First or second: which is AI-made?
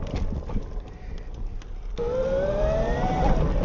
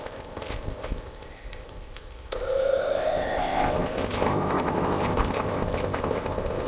second